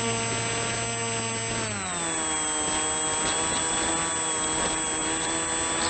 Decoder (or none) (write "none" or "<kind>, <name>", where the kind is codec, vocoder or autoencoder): none